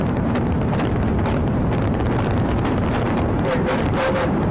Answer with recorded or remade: remade